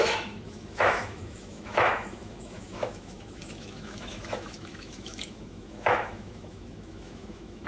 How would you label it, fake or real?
fake